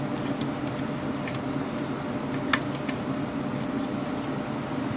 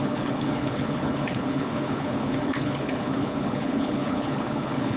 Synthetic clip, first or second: second